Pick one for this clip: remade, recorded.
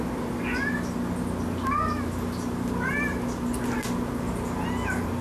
recorded